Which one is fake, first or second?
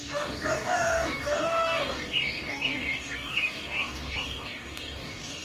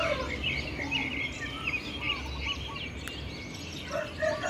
first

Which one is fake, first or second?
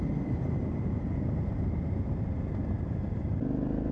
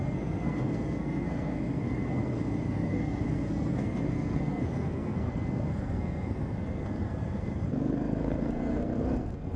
second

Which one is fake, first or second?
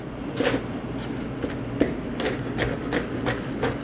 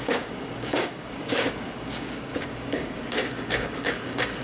second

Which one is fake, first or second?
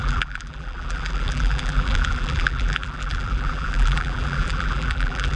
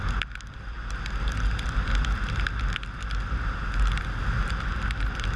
first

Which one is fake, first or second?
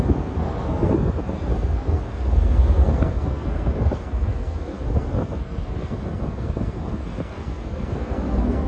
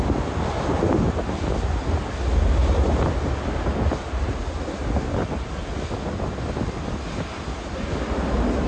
first